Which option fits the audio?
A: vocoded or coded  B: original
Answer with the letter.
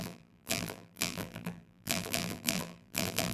A